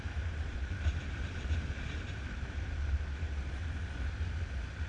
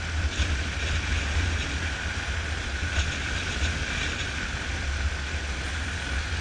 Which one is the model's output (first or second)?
first